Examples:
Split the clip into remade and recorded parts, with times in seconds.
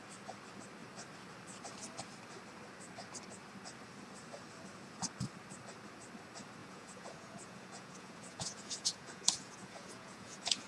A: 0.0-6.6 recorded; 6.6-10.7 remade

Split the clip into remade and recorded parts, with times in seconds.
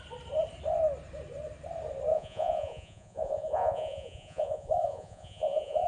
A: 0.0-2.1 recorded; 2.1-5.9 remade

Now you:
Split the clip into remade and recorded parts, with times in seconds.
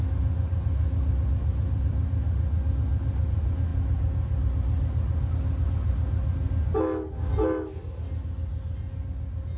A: 0.0-9.6 recorded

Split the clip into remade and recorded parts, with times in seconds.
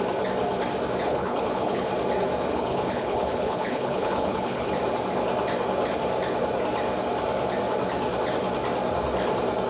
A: 0.0-1.0 recorded; 1.0-1.9 remade; 1.9-2.5 recorded; 2.5-4.7 remade; 4.7-9.7 recorded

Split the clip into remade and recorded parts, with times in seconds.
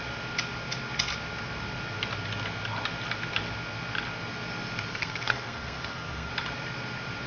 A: 0.0-4.9 recorded; 4.9-6.3 remade; 6.3-7.3 recorded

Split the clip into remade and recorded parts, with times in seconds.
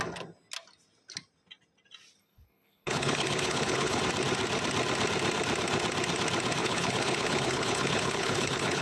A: 0.0-2.2 recorded; 2.2-4.0 remade; 4.0-6.6 recorded; 6.6-8.8 remade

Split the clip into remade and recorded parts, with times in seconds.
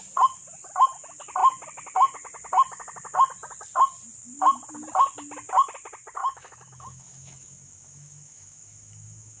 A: 0.0-6.2 recorded; 6.2-9.4 remade